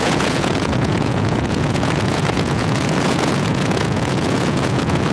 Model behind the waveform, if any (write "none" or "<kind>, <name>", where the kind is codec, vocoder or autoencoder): vocoder, Vocos